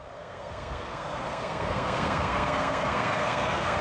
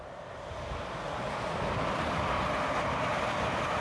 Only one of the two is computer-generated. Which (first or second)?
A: first